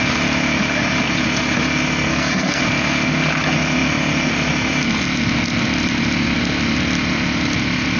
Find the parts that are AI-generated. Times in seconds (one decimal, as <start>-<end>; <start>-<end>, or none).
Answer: 2.1-2.6